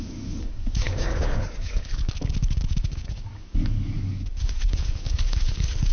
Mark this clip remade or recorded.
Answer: remade